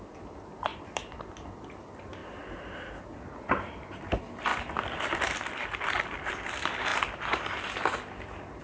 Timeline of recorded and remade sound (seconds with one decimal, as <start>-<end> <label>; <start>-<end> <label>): 0.0-0.7 recorded; 0.7-1.3 remade; 1.3-2.2 recorded; 2.2-3.7 remade; 3.7-4.5 recorded; 4.5-6.3 remade; 6.3-8.6 recorded